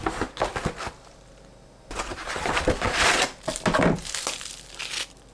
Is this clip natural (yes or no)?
yes